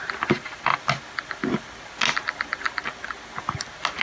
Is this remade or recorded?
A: recorded